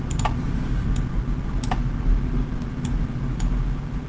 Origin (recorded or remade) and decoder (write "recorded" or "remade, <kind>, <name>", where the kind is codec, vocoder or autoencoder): recorded